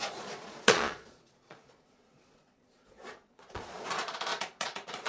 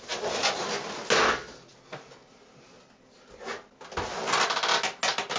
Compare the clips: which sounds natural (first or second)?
second